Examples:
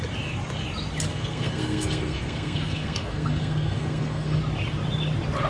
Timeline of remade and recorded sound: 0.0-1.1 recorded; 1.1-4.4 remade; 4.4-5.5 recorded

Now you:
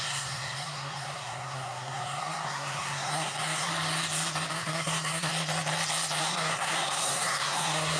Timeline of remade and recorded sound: 0.0-3.7 remade; 3.7-4.5 recorded; 4.5-5.3 remade; 5.3-6.2 recorded; 6.2-8.0 remade

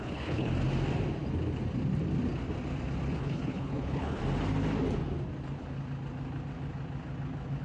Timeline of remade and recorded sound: 0.0-0.5 remade; 0.5-3.2 recorded; 3.2-4.2 remade; 4.2-7.6 recorded

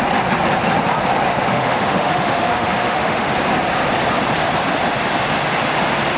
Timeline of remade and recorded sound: 0.0-1.5 recorded; 1.5-3.3 remade; 3.3-6.2 recorded

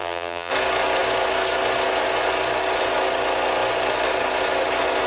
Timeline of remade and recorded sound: 0.0-0.5 remade; 0.5-5.1 recorded